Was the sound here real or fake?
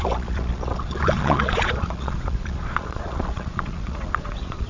fake